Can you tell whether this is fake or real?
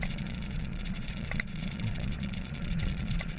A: fake